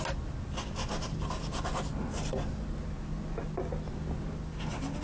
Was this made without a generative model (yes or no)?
yes